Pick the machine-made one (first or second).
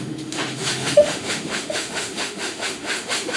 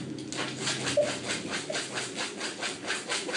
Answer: first